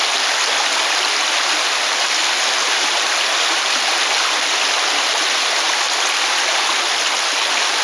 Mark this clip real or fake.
real